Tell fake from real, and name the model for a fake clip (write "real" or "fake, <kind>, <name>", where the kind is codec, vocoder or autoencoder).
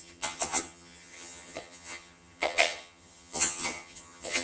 fake, vocoder, HiFi-GAN